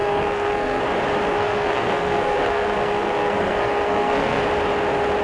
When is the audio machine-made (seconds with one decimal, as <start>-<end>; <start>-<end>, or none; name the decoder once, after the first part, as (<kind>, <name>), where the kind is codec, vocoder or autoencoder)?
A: 0.0-0.8 (codec, SNAC); 1.3-4.4